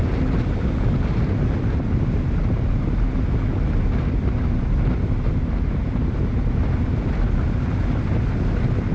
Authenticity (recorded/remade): recorded